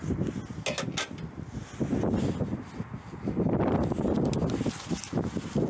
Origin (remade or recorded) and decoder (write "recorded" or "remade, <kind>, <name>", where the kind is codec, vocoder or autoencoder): recorded